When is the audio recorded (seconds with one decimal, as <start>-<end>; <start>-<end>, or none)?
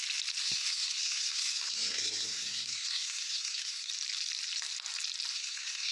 0.0-0.4; 3.9-5.3